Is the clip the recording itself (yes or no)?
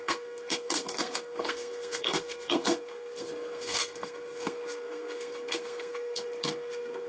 no